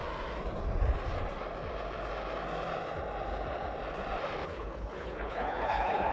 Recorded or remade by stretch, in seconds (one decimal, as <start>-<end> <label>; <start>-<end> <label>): 0.0-4.4 recorded; 4.4-6.1 remade